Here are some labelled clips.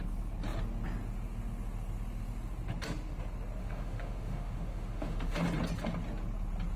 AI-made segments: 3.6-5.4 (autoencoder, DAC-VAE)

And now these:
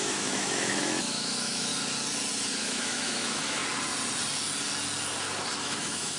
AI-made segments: 0.0-1.7 (autoencoder, DAC-VAE); 2.6-3.6; 5.6-6.2

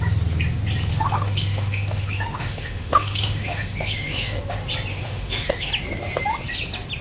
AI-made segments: 0.9-4.4 (autoencoder, DAC-VAE); 4.9-5.7